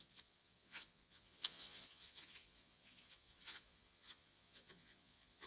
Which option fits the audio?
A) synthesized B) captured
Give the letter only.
A